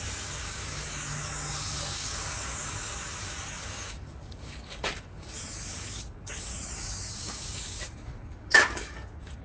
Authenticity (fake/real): fake